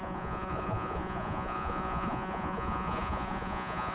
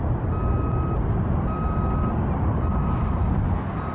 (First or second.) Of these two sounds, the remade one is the first